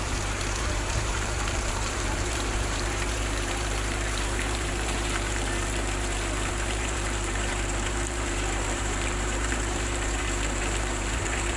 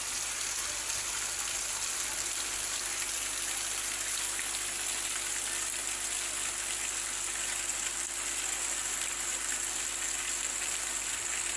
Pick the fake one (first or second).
first